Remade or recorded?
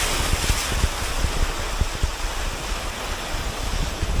recorded